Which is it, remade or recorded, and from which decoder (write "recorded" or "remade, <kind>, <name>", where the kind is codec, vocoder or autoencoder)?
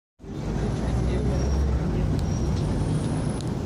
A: recorded